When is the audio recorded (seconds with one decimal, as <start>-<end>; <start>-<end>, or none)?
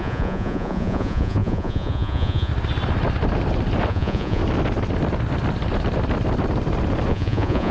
2.5-3.9; 4.4-7.1